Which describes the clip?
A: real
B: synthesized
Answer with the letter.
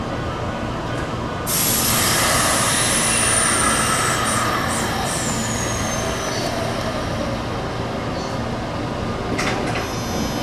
A